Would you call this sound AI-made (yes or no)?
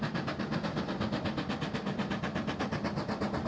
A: no